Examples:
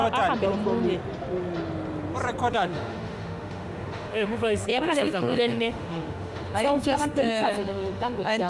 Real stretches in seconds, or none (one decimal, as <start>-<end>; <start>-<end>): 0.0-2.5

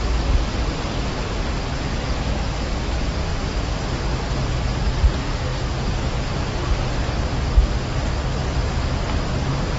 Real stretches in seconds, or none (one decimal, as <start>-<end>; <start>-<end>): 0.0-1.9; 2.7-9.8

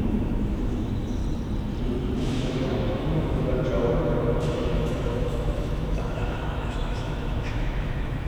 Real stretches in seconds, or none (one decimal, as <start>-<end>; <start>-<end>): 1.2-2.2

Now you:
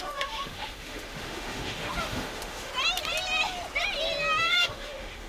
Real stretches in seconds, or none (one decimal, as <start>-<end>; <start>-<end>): 2.7-4.4

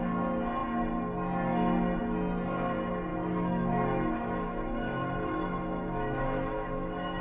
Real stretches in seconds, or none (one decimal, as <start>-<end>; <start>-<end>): 0.0-3.1

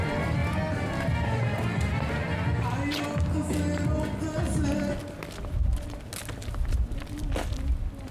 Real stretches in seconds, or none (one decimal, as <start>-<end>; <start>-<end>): 0.0-8.1

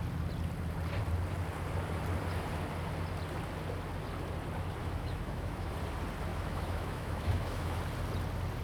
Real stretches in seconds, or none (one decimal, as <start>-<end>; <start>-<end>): 0.0-4.8; 5.7-6.3; 7.8-8.6

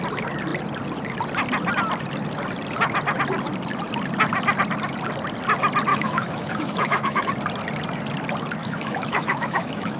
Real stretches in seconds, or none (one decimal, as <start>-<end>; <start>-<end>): 0.0-5.9; 7.3-8.6